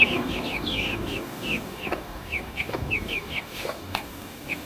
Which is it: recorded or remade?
remade